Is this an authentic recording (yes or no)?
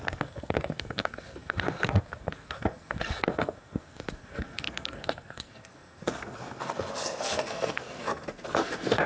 no